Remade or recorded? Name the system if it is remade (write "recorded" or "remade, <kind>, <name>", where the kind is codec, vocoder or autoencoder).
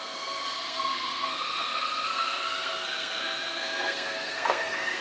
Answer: remade, codec, SNAC